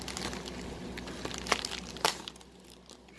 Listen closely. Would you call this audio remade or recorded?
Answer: recorded